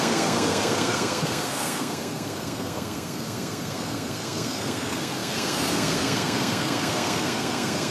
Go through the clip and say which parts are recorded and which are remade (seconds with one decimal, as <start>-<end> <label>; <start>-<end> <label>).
0.0-7.9 remade